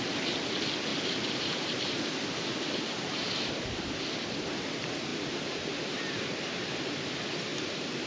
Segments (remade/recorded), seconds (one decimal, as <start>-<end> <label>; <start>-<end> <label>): 0.0-0.9 recorded; 0.9-3.9 remade; 3.9-5.1 recorded; 5.1-6.8 remade; 6.8-7.5 recorded; 7.5-8.1 remade